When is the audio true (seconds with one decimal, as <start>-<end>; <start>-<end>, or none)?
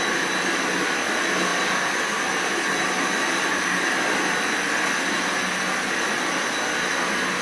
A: 0.0-7.4